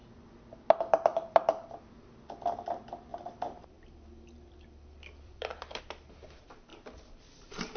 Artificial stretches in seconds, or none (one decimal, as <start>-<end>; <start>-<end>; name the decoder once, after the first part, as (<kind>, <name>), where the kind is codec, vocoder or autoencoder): 1.1-1.8 (vocoder, BigVGAN v2); 3.1-5.8; 6.7-7.8